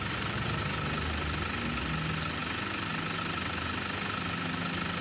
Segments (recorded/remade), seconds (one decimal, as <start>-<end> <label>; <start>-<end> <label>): 0.0-5.0 recorded